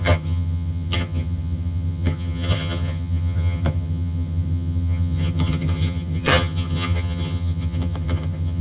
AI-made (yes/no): yes